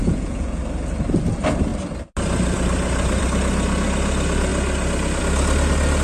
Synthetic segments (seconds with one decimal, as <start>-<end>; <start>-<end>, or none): 0.0-0.6